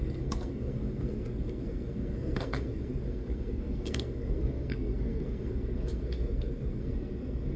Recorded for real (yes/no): no